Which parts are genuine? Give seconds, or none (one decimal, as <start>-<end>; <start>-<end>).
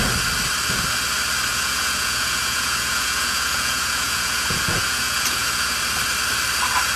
0.0-1.5; 5.7-7.0